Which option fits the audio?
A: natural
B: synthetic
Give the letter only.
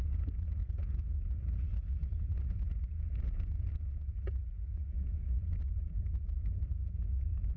B